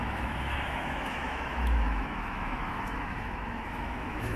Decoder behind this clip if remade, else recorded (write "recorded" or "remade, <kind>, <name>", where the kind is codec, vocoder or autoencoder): remade, autoencoder, DAC-VAE